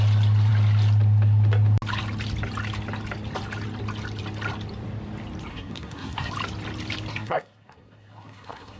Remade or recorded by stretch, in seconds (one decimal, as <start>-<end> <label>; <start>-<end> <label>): 0.0-5.5 recorded; 5.5-6.3 remade; 6.3-7.1 recorded; 7.1-8.8 remade